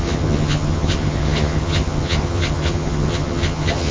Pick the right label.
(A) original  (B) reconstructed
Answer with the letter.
B